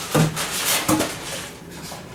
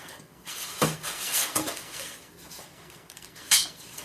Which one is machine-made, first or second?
second